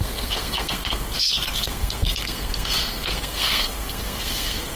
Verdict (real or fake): fake